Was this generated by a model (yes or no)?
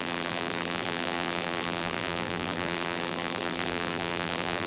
yes